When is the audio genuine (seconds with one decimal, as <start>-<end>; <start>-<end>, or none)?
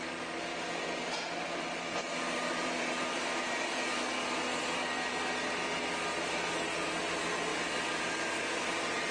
0.0-9.1